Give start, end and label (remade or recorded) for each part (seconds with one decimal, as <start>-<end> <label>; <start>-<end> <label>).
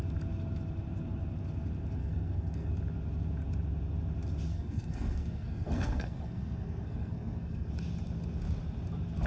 0.0-2.0 recorded; 2.0-2.7 remade; 2.7-4.5 recorded; 4.5-7.7 remade; 7.7-9.3 recorded